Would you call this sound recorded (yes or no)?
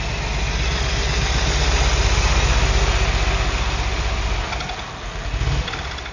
yes